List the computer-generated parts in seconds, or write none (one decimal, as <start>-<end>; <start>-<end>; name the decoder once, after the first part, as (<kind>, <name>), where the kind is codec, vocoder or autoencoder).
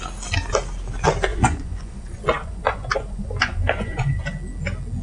1.3-4.2 (vocoder, Vocos)